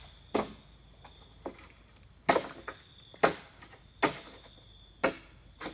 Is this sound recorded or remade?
recorded